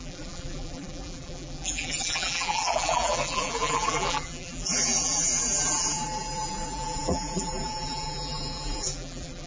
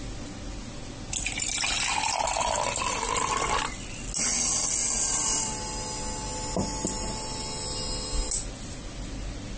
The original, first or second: second